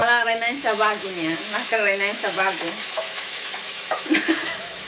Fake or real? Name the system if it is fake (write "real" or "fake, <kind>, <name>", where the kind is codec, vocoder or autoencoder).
fake, autoencoder, DAC-VAE